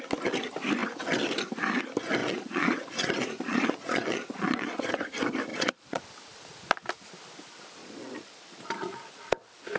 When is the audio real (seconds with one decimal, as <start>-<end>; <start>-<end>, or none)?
0.0-2.2; 4.9-5.5; 6.0-7.8; 9.1-9.8